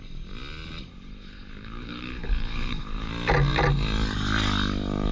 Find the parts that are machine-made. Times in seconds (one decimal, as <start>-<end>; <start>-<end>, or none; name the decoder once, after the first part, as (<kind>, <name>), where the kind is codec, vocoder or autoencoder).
0.9-3.1 (codec, HILCodec)